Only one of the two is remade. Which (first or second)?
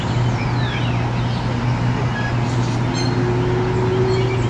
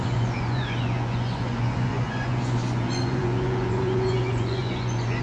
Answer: second